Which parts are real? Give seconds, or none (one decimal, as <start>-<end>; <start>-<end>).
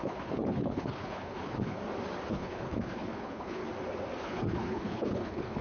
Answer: 1.8-2.3; 3.6-4.2